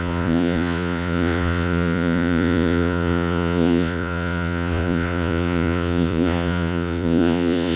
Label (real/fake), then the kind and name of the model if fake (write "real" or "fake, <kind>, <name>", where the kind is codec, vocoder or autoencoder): fake, vocoder, Vocos